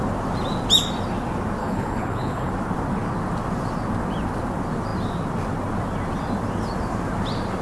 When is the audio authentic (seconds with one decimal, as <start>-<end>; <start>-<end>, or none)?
0.0-1.6; 2.5-7.6